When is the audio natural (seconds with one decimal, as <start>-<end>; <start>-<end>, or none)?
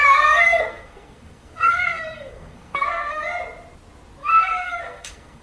3.2-4.2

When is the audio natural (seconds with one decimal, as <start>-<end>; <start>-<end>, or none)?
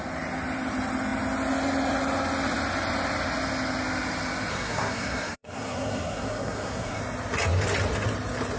0.0-4.5; 7.0-8.6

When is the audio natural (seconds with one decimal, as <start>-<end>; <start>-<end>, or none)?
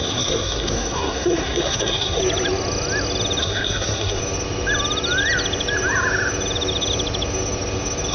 2.2-3.4; 4.2-8.1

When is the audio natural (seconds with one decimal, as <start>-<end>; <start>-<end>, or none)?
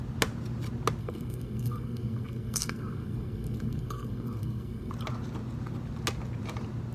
0.0-1.0; 4.9-6.9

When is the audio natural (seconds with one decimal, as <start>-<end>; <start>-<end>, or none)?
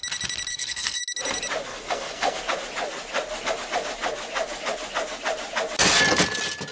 0.0-0.5; 1.0-1.7; 2.4-6.7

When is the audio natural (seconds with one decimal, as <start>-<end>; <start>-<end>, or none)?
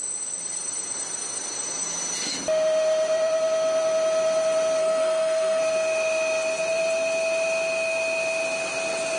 0.0-4.8; 5.6-9.2